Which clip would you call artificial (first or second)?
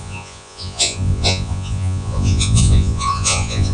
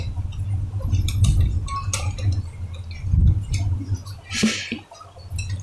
first